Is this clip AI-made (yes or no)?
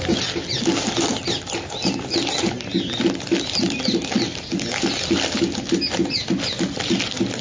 no